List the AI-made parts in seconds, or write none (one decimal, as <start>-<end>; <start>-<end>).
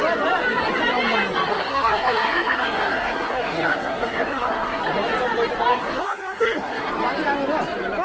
1.5-4.8; 5.7-6.9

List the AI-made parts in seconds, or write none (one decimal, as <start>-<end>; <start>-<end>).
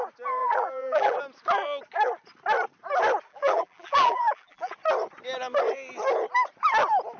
0.4-1.2; 3.3-4.7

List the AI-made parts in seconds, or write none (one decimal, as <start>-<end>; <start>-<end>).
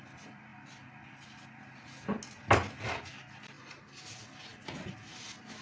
none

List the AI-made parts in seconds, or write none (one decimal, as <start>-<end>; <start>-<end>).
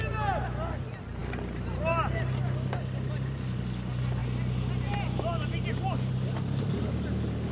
none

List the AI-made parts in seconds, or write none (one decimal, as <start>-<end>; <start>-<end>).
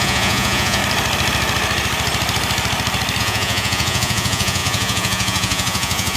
0.0-0.8; 3.2-6.2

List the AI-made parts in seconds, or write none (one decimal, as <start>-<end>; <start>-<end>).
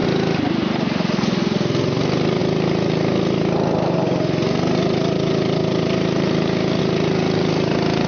none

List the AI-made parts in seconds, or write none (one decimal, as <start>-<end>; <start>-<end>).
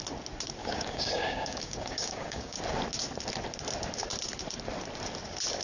0.6-2.6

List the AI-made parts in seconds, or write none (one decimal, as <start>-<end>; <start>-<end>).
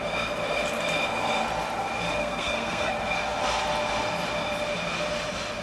2.2-2.9